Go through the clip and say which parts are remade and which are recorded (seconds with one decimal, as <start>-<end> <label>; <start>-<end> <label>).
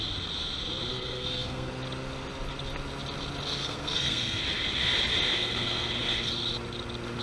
0.0-0.9 recorded; 0.9-1.7 remade; 1.7-3.6 recorded; 3.6-4.4 remade; 4.4-5.4 recorded; 5.4-5.9 remade; 5.9-7.2 recorded